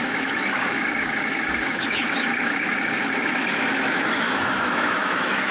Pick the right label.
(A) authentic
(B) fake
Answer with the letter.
B